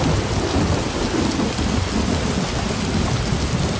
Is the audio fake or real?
real